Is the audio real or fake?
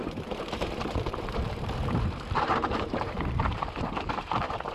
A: fake